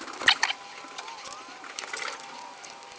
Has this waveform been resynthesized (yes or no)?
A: no